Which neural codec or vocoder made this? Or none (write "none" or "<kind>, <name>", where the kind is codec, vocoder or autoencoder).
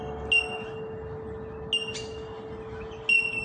none